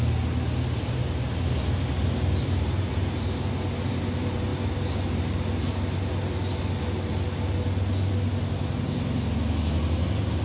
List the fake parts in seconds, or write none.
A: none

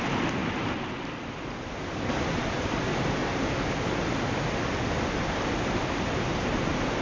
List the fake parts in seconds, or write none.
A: 0.0-0.4 (vocoder, BigVGAN v2); 2.2-3.2; 5.8-7.0

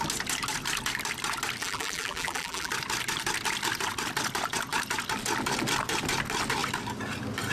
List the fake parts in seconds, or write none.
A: 1.6-2.7 (vocoder, BigVGAN v2)

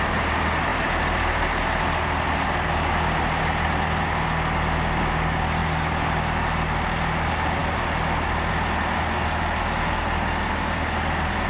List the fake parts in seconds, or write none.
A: none

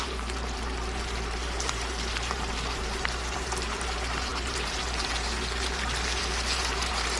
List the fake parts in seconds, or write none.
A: 0.0-7.2 (vocoder, BigVGAN v2)

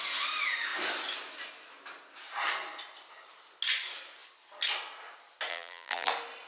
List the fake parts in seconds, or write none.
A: 5.5-6.1 (vocoder, BigVGAN v2)

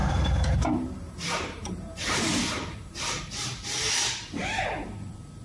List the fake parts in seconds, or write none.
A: 0.0-3.2 (vocoder, BigVGAN v2)